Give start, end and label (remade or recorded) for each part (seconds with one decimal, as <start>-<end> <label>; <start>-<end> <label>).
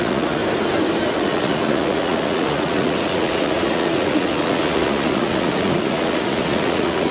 0.0-0.4 remade; 0.4-1.1 recorded; 1.1-7.1 remade